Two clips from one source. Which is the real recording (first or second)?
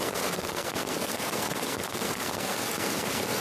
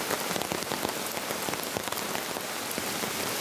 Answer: second